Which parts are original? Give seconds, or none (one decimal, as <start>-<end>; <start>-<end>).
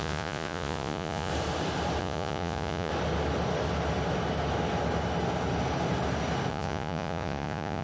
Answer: 1.3-2.0; 2.9-6.5